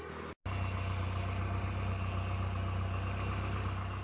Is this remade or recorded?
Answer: recorded